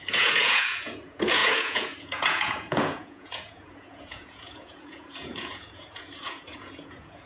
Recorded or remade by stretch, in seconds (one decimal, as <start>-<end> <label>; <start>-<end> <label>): 0.0-7.3 remade